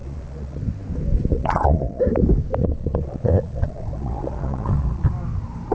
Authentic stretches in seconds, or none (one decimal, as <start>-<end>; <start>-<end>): 0.6-1.3; 2.0-2.6; 5.1-5.7